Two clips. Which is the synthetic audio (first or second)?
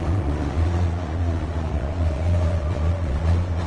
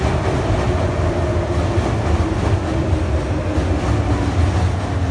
first